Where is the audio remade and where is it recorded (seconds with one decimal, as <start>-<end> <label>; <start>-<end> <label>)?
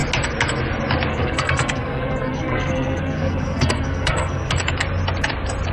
0.0-1.1 recorded; 1.1-4.5 remade; 4.5-5.7 recorded